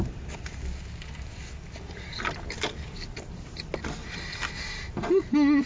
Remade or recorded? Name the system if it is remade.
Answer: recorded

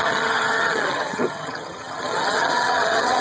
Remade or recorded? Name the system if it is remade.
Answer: remade, vocoder, HiFi-GAN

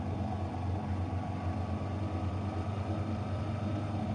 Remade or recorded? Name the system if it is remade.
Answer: recorded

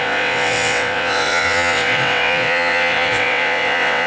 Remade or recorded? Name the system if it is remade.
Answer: remade, vocoder, WaveNeXt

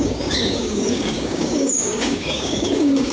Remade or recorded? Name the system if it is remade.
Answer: remade, codec, DAC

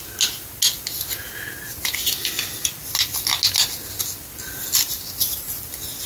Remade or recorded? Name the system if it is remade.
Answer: recorded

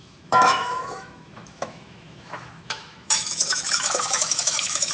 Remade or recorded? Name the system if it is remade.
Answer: remade, autoencoder, DAC-VAE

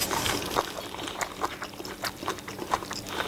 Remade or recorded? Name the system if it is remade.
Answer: recorded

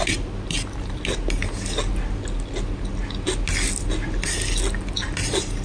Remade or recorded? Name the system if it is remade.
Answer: recorded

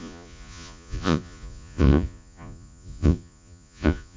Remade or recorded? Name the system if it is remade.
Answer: remade, vocoder, Vocos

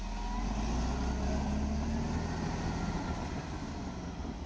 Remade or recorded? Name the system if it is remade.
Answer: recorded